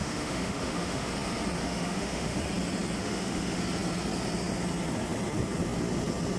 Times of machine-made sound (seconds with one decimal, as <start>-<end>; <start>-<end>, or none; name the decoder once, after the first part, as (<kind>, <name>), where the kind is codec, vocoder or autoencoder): 0.0-1.1 (autoencoder, DAC-VAE); 1.6-2.4; 3.0-3.6